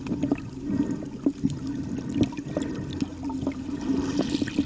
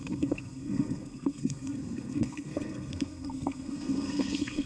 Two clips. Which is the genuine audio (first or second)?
first